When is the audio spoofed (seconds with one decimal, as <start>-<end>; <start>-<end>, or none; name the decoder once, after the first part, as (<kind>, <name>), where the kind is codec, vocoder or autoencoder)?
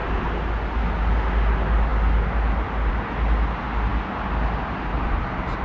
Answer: none